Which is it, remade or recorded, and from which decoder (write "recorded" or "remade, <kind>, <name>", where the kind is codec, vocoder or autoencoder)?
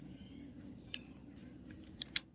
recorded